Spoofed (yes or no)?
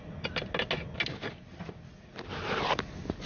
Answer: no